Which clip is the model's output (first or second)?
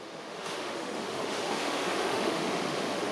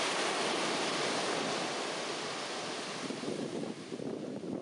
first